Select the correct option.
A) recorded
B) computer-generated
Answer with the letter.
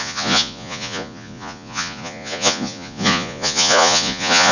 B